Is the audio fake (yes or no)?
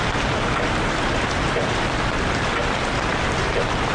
no